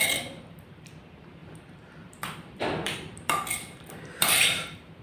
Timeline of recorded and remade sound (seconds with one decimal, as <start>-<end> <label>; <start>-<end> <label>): 0.0-5.0 remade